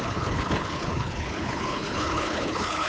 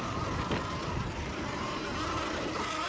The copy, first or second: first